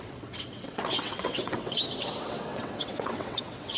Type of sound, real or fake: fake